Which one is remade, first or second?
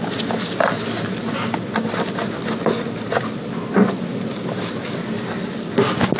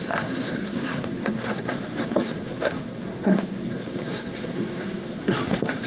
second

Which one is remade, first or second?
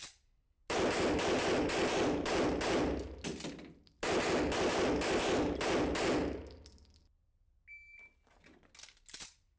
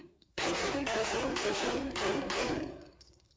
second